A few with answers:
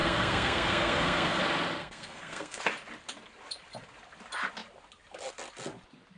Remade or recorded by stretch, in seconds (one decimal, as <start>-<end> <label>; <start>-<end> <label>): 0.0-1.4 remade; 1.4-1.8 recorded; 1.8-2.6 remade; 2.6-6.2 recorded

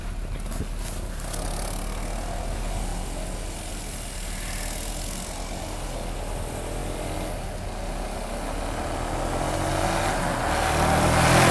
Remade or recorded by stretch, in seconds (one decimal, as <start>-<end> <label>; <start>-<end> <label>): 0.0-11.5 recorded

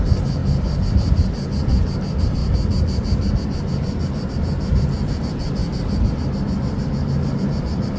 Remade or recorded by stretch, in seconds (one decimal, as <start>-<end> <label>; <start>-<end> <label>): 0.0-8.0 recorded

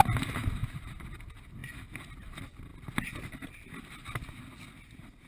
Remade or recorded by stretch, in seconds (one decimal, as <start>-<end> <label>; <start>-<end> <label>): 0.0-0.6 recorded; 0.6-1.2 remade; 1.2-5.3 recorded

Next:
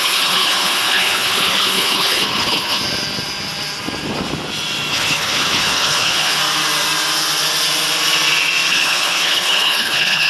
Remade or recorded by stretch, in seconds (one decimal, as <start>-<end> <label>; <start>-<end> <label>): 0.0-2.8 remade; 2.8-4.9 recorded; 4.9-6.4 remade; 6.4-8.7 recorded; 8.7-10.3 remade

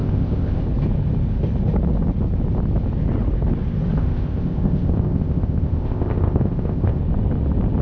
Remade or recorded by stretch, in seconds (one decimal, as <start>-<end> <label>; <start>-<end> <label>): 0.0-0.6 remade; 0.6-4.0 recorded; 4.0-7.0 remade; 7.0-7.8 recorded

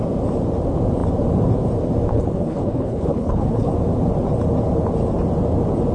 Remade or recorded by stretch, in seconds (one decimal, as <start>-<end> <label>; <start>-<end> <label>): 0.0-2.1 recorded; 2.1-3.7 remade; 3.7-5.9 recorded